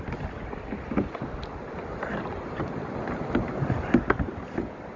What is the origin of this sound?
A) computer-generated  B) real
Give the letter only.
B